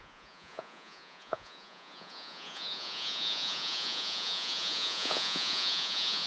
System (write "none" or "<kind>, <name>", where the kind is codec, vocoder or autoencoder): vocoder, Vocos